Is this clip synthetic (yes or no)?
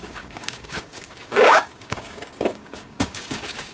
yes